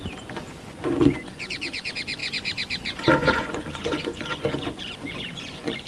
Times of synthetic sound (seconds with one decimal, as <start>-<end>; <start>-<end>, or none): 0.0-5.9